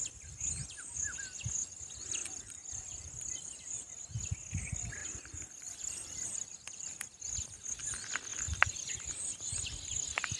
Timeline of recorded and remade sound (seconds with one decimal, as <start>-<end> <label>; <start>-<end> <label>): 0.0-2.2 recorded; 2.2-3.9 remade; 3.9-5.0 recorded; 5.0-7.2 remade; 7.2-8.3 recorded; 8.3-9.1 remade; 9.1-10.4 recorded